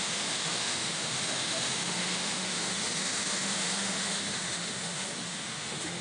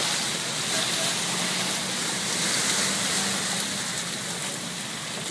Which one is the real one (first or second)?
second